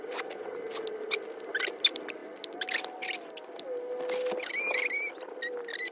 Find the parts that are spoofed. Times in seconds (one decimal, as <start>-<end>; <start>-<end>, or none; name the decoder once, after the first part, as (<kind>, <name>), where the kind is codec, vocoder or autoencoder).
none